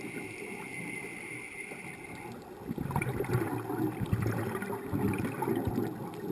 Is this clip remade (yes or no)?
no